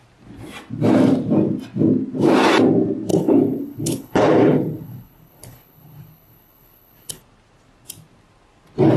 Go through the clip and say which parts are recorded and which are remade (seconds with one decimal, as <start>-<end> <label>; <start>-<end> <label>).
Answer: 0.0-3.1 recorded; 3.1-7.2 remade; 7.2-9.0 recorded